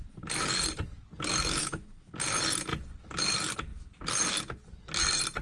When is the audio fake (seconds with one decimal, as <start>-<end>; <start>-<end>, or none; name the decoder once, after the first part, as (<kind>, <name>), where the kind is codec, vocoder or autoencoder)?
1.6-2.1 (autoencoder, DAC-VAE)